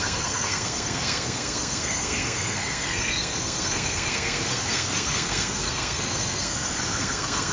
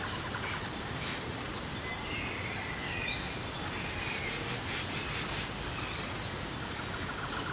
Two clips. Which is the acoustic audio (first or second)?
second